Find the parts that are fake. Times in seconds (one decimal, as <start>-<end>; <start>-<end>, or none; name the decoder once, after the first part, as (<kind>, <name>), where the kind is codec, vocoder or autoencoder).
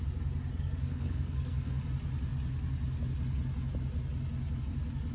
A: 0.5-1.8 (codec, SNAC)